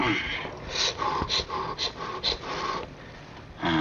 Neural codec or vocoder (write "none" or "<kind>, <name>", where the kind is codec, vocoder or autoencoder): none